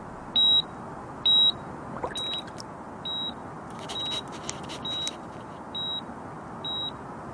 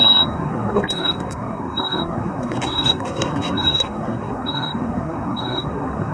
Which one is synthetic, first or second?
second